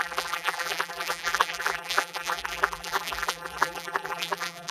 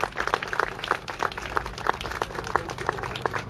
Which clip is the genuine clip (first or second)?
second